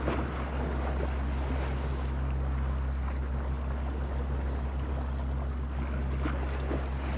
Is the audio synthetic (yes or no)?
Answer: no